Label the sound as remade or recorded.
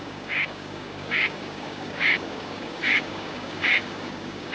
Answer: remade